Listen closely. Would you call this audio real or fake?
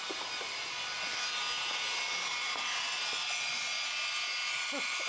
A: real